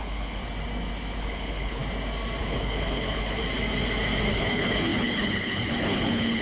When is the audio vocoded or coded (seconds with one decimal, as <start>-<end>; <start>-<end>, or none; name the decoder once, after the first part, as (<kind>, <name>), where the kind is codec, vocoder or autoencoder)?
0.0-0.4 (codec, HILCodec); 1.2-1.8; 2.4-3.4; 4.3-6.4